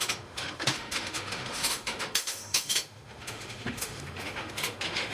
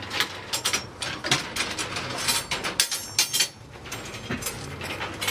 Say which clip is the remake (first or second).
first